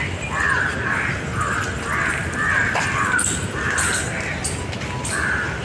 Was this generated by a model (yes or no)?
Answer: no